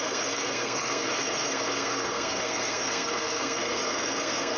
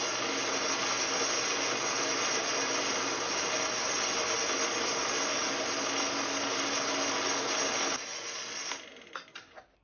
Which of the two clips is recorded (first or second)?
second